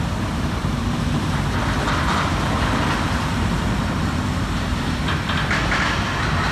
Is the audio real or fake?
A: fake